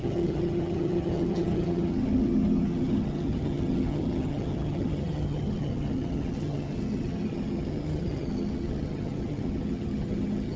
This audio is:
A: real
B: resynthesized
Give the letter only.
B